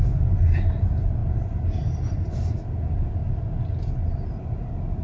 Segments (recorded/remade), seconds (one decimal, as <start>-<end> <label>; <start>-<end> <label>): 0.0-5.0 recorded